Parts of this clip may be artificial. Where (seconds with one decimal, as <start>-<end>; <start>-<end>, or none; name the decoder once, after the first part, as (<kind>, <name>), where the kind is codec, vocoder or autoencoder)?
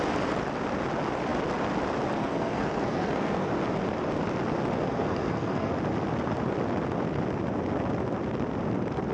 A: 2.2-3.5 (codec, SNAC); 4.9-5.7